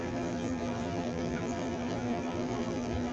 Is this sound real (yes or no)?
no